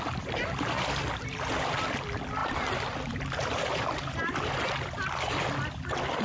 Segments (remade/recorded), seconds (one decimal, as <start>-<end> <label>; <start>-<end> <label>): 0.0-6.2 recorded